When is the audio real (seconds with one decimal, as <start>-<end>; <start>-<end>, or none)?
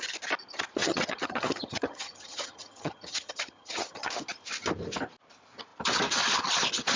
0.0-0.8; 4.1-7.0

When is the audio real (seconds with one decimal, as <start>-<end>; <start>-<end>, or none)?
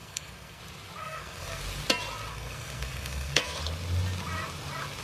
0.6-1.0; 1.6-2.3; 3.6-5.0